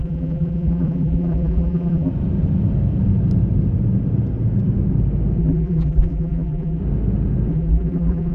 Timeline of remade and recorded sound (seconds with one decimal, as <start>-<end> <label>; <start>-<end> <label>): 0.0-2.1 remade; 2.1-5.4 recorded; 5.4-6.8 remade; 6.8-7.5 recorded; 7.5-8.3 remade